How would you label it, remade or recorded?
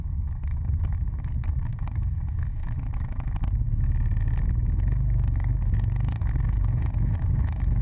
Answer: remade